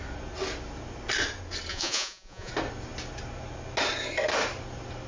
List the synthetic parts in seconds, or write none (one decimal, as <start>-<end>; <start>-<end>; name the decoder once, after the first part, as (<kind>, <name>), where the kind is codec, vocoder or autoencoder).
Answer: 1.7-2.5 (vocoder, Vocos)